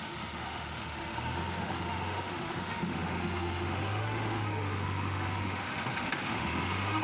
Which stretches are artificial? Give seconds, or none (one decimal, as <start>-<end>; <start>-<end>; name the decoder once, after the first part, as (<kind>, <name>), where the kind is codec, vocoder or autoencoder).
0.0-7.0 (autoencoder, DAC-VAE)